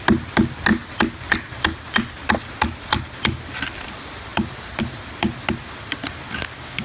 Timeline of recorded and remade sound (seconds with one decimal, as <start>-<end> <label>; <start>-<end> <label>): 0.0-6.8 recorded